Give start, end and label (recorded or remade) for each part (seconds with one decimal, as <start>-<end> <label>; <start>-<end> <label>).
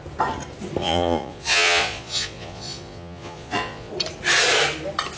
0.0-0.8 recorded; 0.8-3.9 remade; 3.9-5.2 recorded